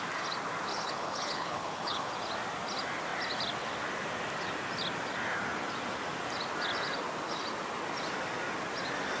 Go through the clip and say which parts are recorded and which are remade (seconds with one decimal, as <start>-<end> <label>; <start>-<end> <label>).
0.0-0.7 recorded; 0.7-2.1 remade; 2.1-9.2 recorded

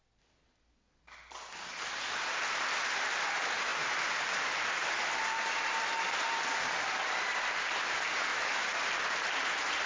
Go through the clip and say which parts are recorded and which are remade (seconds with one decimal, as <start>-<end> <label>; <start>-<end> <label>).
0.0-9.9 recorded

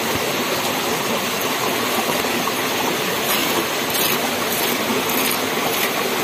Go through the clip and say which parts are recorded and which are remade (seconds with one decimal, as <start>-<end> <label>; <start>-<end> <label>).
0.0-6.2 recorded

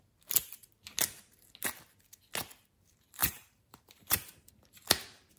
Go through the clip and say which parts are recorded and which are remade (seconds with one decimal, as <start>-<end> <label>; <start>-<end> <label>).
0.0-3.2 recorded; 3.2-4.5 remade; 4.5-5.4 recorded

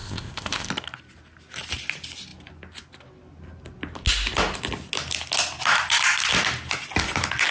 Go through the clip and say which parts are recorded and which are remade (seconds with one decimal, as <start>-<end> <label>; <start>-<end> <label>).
0.0-0.7 remade; 0.7-7.5 recorded

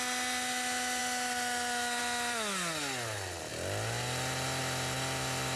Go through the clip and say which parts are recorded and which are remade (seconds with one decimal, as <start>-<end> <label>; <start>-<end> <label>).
0.0-5.6 recorded

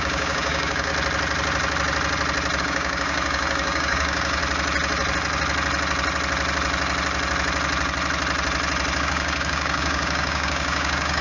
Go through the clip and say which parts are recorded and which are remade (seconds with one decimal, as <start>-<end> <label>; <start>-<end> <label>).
0.0-0.9 remade; 0.9-2.6 recorded; 2.6-4.4 remade; 4.4-9.0 recorded; 9.0-11.2 remade

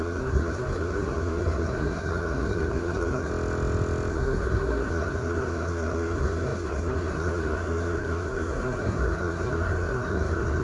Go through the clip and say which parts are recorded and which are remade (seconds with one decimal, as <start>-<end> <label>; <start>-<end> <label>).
0.0-3.3 remade; 3.3-4.1 recorded; 4.1-10.6 remade